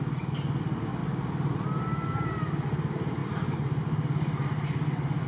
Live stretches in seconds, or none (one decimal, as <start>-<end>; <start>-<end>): 0.0-5.3